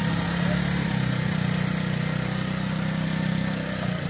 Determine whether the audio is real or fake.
real